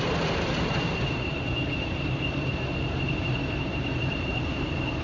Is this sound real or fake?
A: fake